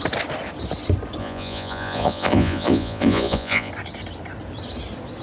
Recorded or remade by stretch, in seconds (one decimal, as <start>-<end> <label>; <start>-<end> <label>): 0.0-1.2 recorded; 1.2-3.7 remade; 3.7-5.2 recorded